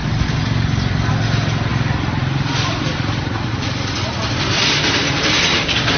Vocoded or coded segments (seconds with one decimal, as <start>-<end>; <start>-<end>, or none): 0.0-1.1; 1.7-5.3